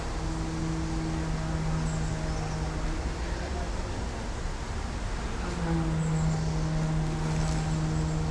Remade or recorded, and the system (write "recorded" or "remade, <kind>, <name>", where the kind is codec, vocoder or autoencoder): recorded